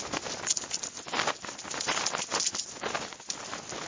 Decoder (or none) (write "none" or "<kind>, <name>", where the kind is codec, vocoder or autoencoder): none